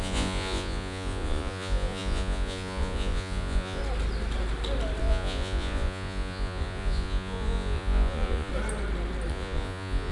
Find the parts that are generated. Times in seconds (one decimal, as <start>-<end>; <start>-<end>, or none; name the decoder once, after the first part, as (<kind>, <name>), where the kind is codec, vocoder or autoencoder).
0.0-3.8 (vocoder, Vocos); 5.0-8.5; 9.3-10.1